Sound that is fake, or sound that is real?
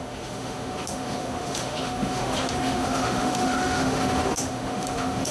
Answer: fake